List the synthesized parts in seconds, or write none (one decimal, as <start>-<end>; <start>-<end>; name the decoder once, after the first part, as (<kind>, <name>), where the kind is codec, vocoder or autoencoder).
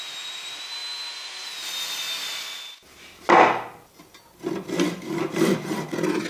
none